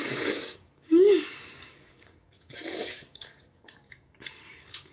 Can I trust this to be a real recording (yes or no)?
no